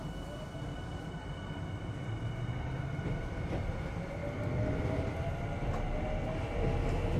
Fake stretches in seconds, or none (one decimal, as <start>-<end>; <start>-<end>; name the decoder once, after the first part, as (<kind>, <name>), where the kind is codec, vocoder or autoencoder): none